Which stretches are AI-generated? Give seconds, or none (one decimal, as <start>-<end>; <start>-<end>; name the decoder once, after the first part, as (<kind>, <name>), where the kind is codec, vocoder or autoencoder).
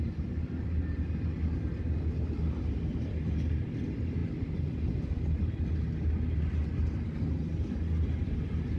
none